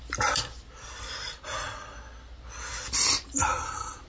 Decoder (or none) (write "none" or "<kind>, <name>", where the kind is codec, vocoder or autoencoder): none